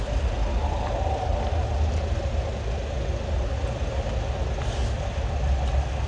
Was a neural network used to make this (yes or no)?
no